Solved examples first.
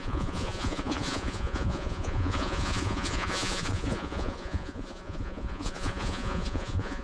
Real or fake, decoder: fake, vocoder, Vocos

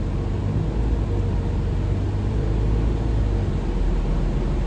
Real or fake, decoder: real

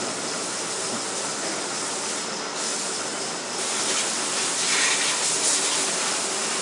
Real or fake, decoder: real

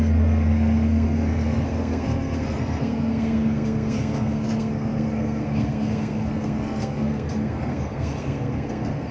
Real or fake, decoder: fake, codec, SNAC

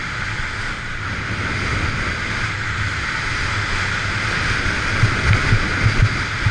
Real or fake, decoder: real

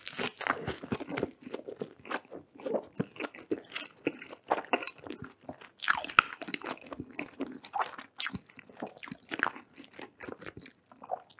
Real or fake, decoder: real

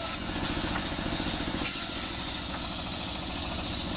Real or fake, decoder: fake, vocoder, Vocos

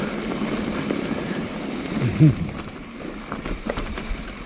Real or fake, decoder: fake, vocoder, BigVGAN v2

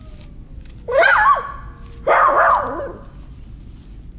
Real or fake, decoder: real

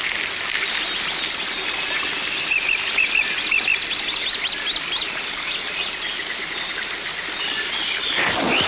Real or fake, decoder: real